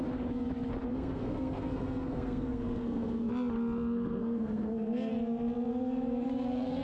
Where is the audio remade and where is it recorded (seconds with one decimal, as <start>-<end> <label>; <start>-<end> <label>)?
0.0-0.9 recorded; 0.9-3.3 remade; 3.3-4.2 recorded; 4.2-5.1 remade; 5.1-5.7 recorded; 5.7-6.8 remade